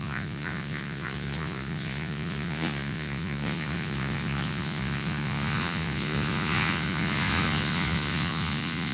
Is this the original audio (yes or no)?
no